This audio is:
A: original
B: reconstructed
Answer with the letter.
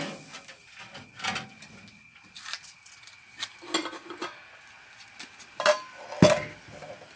A